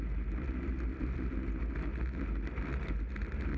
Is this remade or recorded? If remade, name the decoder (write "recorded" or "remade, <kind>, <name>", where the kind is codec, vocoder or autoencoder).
recorded